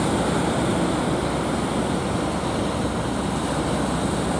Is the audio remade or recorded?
recorded